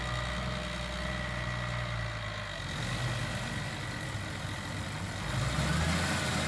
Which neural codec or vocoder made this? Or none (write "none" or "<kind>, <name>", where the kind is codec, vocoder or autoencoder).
none